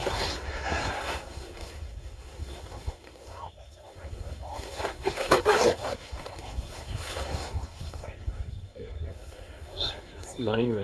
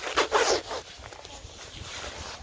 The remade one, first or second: first